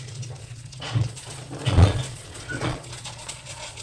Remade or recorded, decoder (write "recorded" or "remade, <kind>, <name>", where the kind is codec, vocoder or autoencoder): remade, vocoder, Vocos